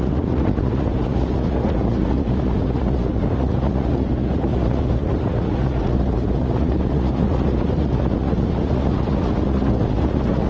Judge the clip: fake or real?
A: fake